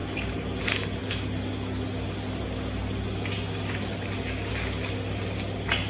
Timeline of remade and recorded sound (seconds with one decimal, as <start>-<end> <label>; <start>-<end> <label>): 0.0-5.9 recorded